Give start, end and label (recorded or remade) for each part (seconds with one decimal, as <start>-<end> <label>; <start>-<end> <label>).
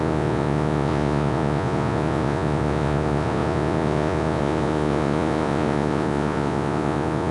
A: 0.0-7.3 remade